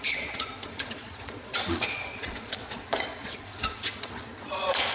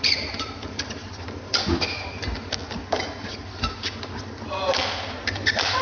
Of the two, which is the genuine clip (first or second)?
second